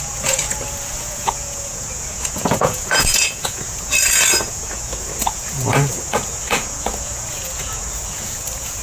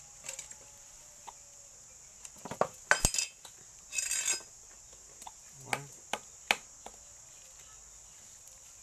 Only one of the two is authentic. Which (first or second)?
second